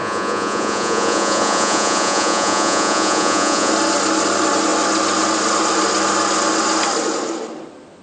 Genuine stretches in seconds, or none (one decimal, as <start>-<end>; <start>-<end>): 3.7-8.0